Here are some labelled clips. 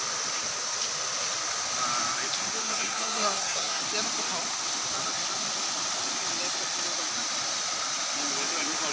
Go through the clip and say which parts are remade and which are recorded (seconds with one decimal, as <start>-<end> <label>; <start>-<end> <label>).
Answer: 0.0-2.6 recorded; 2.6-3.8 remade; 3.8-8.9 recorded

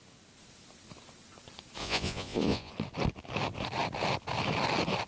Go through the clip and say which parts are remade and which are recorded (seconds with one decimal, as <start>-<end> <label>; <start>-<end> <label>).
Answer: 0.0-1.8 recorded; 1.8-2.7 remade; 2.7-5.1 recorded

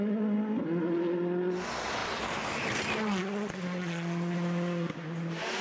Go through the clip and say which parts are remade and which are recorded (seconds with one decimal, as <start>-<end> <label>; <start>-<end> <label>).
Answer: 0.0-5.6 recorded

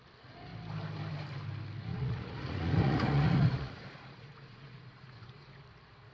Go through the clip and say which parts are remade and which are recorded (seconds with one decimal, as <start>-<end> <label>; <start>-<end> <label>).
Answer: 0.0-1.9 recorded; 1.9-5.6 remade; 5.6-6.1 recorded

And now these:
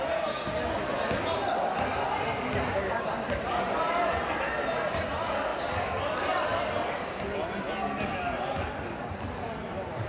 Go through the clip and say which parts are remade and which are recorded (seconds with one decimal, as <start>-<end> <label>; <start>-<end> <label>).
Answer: 0.0-10.1 recorded